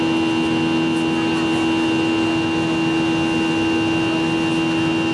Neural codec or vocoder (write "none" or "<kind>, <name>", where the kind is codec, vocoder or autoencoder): none